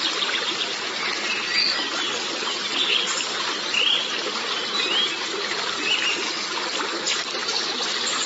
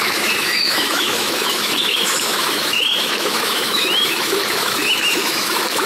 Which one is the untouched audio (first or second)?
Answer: first